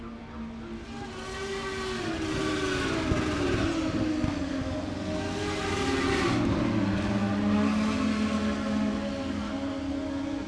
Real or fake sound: real